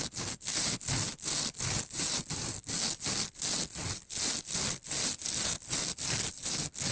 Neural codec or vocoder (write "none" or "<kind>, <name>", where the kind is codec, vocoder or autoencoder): none